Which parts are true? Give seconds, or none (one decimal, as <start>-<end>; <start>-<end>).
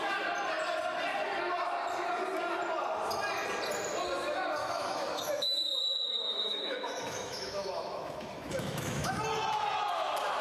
0.0-4.6; 9.2-10.4